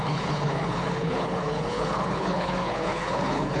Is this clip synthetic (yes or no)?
yes